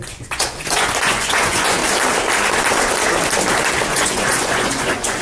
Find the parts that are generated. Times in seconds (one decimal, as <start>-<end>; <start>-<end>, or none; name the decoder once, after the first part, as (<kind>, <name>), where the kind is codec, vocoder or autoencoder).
0.0-1.8 (vocoder, Vocos); 3.9-5.2